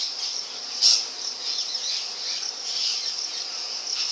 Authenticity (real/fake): fake